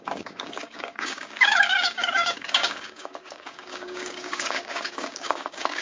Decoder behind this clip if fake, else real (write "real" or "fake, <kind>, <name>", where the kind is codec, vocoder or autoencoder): fake, codec, DAC